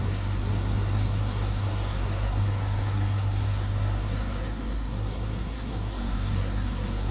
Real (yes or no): no